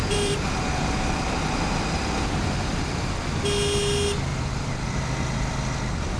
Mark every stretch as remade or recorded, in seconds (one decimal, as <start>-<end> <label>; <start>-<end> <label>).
0.0-1.7 remade; 1.7-2.7 recorded; 2.7-3.2 remade; 3.2-4.3 recorded; 4.3-5.0 remade; 5.0-6.2 recorded